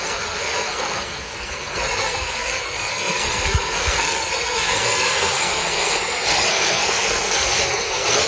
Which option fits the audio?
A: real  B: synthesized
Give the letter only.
B